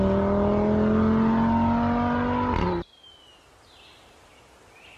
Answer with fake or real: real